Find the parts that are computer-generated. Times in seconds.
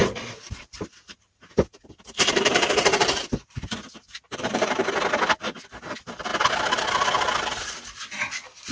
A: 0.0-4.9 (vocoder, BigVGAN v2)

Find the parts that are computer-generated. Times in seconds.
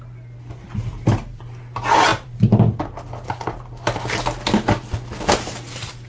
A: 0.9-1.4 (vocoder, BigVGAN v2); 2.1-2.8